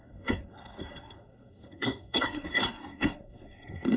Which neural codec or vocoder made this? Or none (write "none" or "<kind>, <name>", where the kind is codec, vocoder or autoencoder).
codec, SNAC